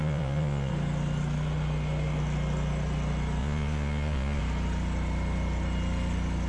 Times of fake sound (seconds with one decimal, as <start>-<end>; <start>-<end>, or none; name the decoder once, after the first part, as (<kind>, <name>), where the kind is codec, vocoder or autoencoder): 0.0-0.7 (vocoder, Vocos); 3.4-4.4